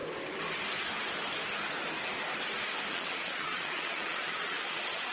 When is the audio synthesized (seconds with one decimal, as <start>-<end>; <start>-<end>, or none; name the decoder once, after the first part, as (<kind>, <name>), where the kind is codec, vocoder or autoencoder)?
2.9-5.1 (vocoder, Vocos)